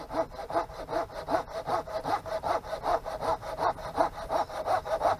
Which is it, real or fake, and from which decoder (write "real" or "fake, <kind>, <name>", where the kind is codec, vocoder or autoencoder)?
real